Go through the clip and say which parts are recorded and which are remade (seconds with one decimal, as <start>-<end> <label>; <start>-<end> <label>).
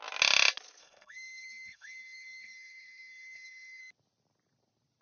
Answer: 0.0-0.8 recorded; 0.8-3.8 remade; 3.8-5.0 recorded